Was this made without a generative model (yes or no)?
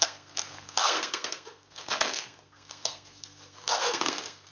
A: no